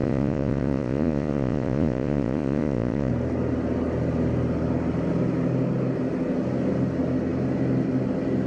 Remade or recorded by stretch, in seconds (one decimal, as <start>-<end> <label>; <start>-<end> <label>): 0.0-3.1 remade; 3.1-8.5 recorded